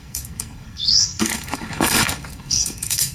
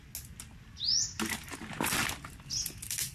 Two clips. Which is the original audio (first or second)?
second